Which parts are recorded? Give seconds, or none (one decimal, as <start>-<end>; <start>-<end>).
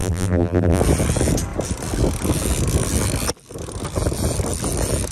0.8-5.1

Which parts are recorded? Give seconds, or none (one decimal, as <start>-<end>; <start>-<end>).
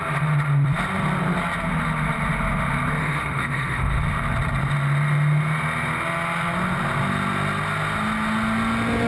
0.0-3.0; 4.0-9.1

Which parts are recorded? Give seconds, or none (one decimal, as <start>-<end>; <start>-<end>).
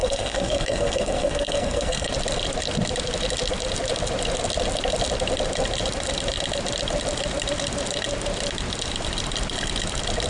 2.1-10.3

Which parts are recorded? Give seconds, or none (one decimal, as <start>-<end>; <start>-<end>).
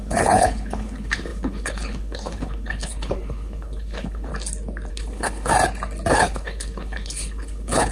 4.3-4.9; 5.5-6.1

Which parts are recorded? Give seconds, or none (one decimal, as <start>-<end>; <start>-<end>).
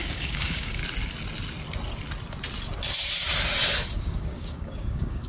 0.8-4.0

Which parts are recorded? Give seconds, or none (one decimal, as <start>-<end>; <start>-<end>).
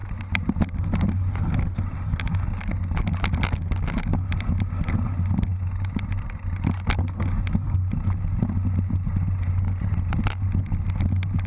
0.0-11.5